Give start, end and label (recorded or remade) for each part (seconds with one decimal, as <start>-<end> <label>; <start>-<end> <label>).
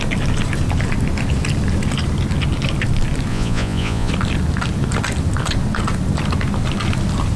0.0-3.3 recorded; 3.3-4.1 remade; 4.1-7.4 recorded